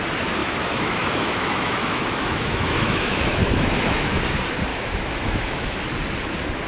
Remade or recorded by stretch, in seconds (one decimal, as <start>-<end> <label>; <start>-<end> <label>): 0.0-0.4 recorded; 0.4-4.2 remade; 4.2-4.7 recorded; 4.7-5.7 remade; 5.7-6.7 recorded